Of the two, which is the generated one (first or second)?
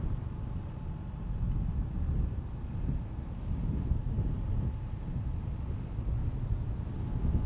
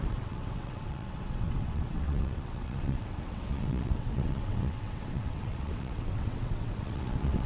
second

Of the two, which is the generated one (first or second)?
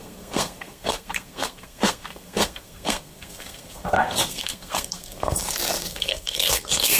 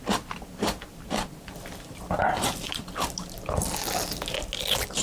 first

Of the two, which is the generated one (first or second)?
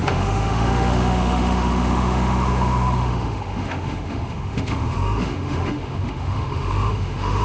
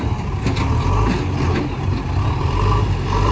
first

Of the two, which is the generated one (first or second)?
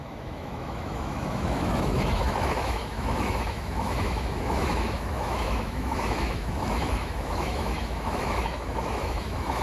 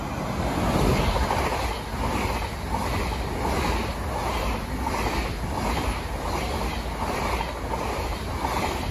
first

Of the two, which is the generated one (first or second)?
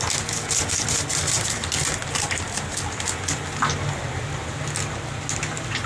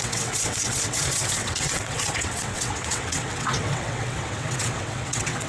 second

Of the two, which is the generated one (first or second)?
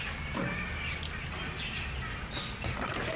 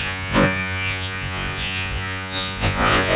second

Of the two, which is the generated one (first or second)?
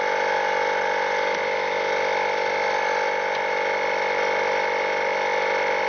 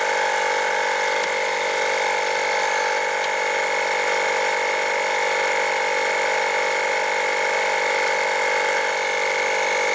second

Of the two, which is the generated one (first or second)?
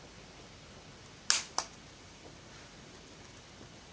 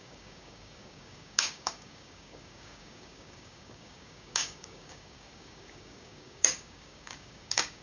second